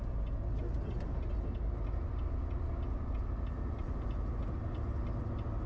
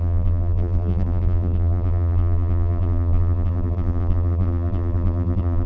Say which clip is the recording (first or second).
first